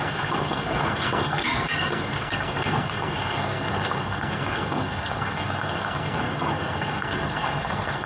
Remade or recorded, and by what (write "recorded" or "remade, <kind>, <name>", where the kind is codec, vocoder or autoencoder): remade, codec, SNAC